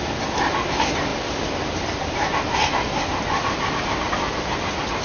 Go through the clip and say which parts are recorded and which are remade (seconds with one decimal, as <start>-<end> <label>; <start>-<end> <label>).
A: 0.0-5.0 recorded